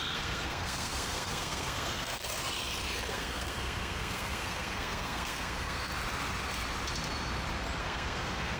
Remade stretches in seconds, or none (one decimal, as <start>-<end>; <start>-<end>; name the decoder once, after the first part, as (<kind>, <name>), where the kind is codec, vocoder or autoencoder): 0.0-2.2 (codec, SNAC); 3.1-5.9; 7.8-8.6